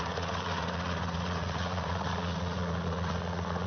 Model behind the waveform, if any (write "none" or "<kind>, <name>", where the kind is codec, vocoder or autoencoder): vocoder, Vocos